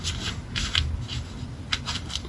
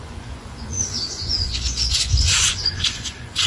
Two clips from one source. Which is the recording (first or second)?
first